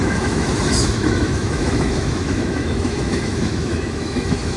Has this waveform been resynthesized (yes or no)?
yes